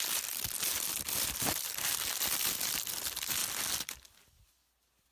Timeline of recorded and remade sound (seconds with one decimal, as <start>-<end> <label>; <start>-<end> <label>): 0.0-0.9 recorded; 0.9-2.6 remade; 2.6-5.1 recorded